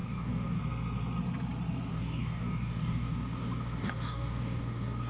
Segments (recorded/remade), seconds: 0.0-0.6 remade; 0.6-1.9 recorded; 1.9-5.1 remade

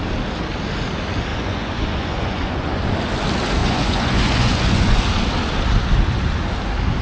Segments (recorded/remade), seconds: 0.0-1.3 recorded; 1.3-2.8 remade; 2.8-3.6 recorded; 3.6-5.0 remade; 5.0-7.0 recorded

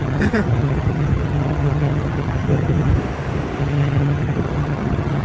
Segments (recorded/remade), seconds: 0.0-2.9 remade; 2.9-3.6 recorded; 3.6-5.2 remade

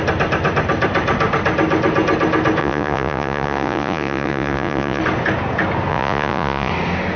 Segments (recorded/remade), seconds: 0.0-2.6 recorded; 2.6-5.0 remade; 5.0-5.9 recorded; 5.9-6.7 remade; 6.7-7.2 recorded

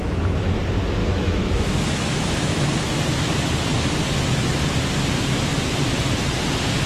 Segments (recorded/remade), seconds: 0.0-1.0 recorded; 1.0-2.7 remade; 2.7-6.9 recorded

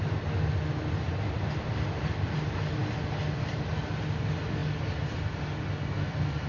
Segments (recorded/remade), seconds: 0.0-6.5 recorded